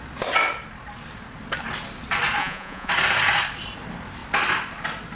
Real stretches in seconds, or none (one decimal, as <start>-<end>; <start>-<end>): 0.0-2.4; 2.9-5.2